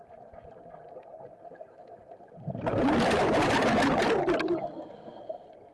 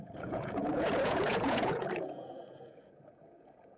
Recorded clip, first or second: first